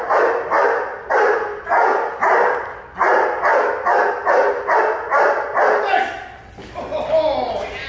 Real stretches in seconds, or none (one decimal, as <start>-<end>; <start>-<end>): 0.0-7.9